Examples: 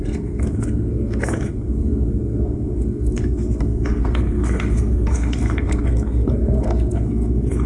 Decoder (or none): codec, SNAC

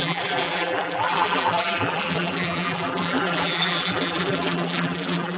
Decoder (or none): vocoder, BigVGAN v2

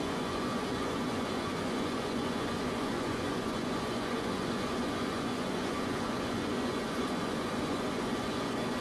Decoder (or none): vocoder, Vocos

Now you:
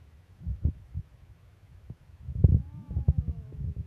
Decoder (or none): autoencoder, DAC-VAE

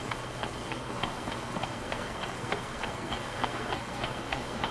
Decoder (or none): codec, SNAC